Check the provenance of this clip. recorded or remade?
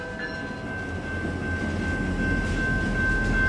recorded